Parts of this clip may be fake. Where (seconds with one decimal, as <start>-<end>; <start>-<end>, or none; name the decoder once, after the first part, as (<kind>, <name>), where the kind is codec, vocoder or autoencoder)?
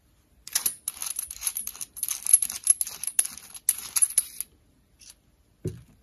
none